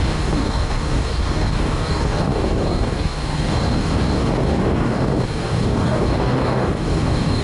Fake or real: fake